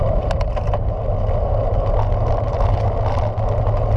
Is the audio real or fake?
real